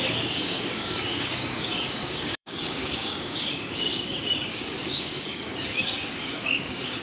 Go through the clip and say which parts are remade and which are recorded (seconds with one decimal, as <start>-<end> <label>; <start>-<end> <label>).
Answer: 0.0-7.0 remade